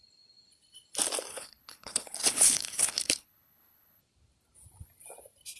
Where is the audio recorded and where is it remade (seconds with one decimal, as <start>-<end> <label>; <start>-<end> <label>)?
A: 0.0-1.3 recorded; 1.3-4.0 remade; 4.0-5.6 recorded